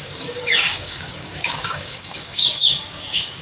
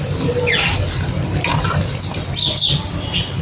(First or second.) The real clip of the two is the second